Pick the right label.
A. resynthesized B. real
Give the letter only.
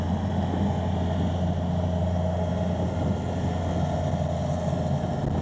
B